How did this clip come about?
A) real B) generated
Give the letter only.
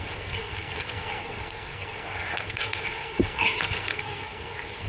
B